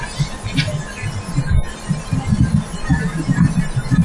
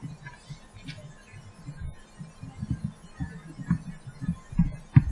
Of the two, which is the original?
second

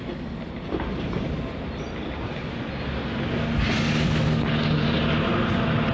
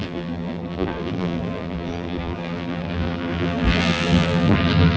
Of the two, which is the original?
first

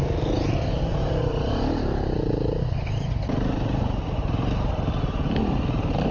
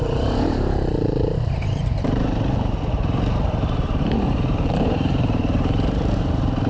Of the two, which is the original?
first